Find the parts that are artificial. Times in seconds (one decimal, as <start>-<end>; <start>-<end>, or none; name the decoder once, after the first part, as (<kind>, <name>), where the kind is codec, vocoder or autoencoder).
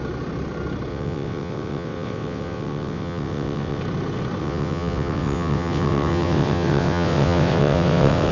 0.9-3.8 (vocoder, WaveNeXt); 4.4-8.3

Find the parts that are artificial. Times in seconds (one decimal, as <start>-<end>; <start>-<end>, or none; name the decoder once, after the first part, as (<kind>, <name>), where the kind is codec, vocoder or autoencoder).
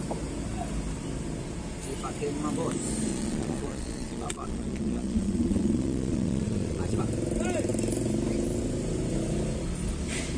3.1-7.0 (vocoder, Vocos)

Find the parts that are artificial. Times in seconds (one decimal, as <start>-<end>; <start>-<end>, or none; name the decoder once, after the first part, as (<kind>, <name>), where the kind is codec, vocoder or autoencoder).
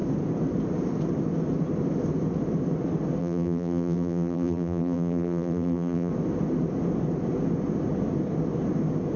3.2-6.1 (vocoder, BigVGAN v2)